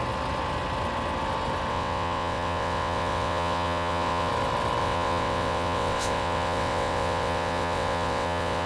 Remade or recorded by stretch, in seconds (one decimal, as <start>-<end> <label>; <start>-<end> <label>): 0.0-1.7 recorded; 1.7-4.3 remade; 4.3-4.8 recorded; 4.8-8.7 remade

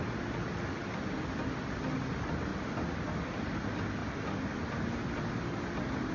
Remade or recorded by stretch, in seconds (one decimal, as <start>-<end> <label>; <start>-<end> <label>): 0.0-6.1 recorded

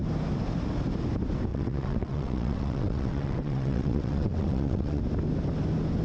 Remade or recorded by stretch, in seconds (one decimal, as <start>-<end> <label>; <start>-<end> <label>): 0.0-1.5 recorded; 1.5-5.0 remade; 5.0-6.0 recorded

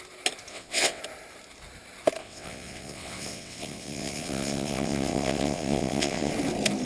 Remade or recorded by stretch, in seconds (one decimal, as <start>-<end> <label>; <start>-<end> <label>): 0.0-0.5 recorded; 0.5-1.0 remade; 1.0-2.2 recorded; 2.2-6.3 remade; 6.3-6.9 recorded

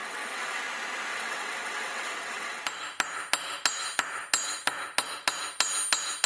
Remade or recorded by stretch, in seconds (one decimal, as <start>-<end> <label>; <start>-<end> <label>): 0.0-0.6 remade; 0.6-1.1 recorded; 1.1-2.6 remade; 2.6-6.3 recorded